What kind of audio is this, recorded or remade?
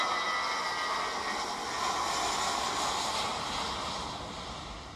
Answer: recorded